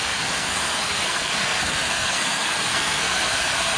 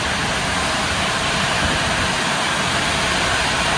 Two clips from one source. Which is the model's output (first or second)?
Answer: first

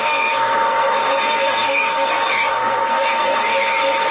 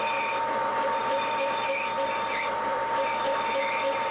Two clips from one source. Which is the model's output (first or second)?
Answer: first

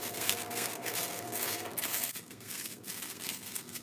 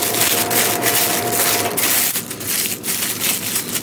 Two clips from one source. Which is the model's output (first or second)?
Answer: first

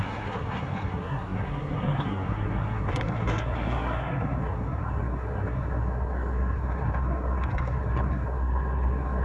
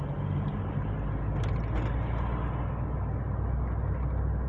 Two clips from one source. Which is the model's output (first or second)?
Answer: first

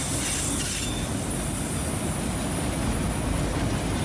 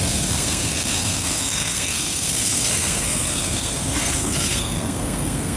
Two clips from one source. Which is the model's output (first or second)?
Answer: second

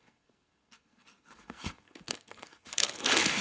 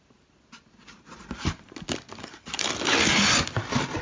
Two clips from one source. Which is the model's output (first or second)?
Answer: first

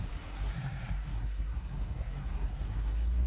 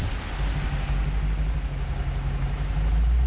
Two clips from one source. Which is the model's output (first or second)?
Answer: first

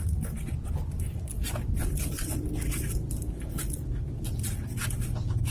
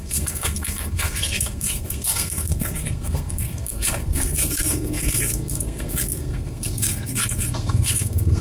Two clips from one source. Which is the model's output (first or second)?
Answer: second